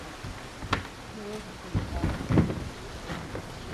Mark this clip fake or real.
real